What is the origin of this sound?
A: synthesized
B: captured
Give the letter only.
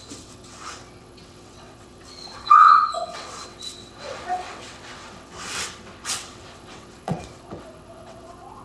A